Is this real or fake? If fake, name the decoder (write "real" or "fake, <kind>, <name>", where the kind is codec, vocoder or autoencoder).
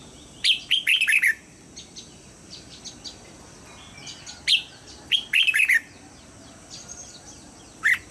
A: real